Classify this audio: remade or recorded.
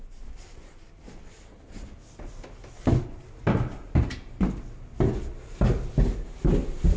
recorded